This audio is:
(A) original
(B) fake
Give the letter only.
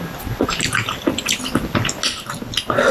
A